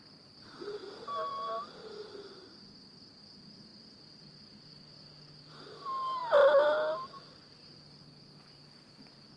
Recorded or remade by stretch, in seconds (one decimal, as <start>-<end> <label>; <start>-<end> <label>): 0.0-9.4 recorded